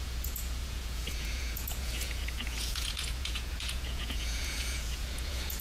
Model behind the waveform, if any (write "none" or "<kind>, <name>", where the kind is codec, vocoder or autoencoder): vocoder, Vocos